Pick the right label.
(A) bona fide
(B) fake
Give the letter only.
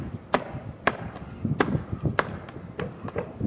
A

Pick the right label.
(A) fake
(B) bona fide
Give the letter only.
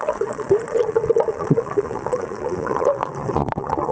A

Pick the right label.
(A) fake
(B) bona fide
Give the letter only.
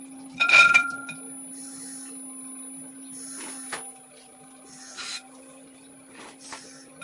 B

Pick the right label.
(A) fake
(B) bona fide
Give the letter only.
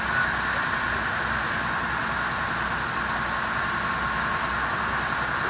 B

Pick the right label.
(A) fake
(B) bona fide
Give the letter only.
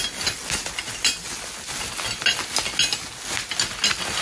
B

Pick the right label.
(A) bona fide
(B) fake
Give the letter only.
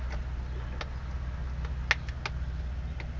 A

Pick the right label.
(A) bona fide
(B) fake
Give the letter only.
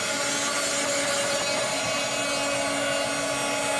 A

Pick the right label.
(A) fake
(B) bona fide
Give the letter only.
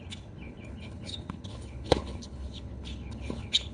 A